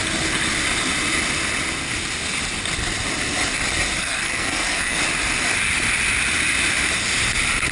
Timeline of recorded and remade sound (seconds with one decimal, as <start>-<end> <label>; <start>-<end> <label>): 0.0-4.0 recorded; 4.0-5.0 remade; 5.0-7.7 recorded